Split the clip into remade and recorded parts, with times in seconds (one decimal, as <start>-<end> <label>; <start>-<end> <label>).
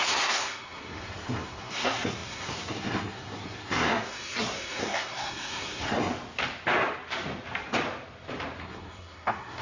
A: 0.0-6.1 remade; 6.1-8.6 recorded; 8.6-9.6 remade